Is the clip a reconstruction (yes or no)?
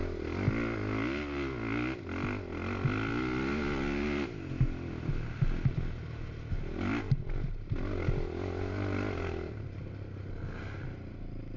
no